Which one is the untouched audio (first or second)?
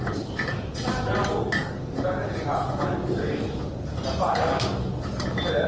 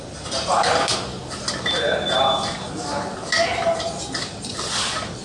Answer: first